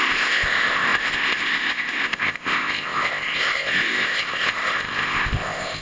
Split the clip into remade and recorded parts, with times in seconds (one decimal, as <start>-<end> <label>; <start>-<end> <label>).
0.0-5.8 remade